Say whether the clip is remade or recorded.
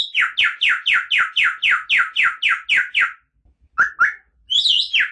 recorded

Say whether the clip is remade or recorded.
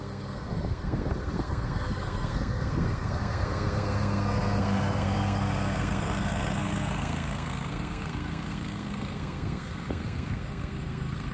remade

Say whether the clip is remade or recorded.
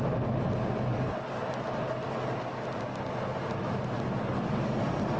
recorded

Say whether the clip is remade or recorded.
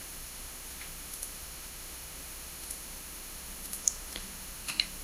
remade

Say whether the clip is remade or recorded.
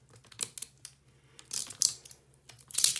recorded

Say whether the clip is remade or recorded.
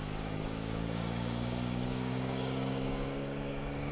remade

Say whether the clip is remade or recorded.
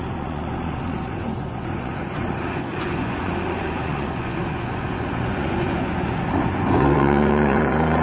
remade